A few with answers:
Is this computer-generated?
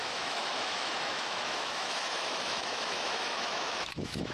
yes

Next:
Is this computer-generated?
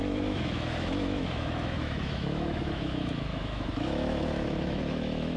yes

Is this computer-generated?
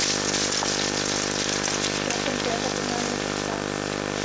no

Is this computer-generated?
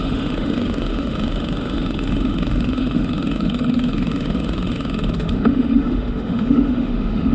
yes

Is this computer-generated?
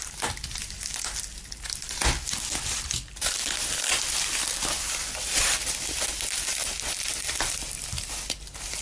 no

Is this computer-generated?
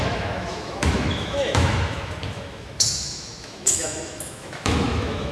yes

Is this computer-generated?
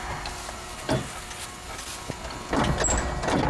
no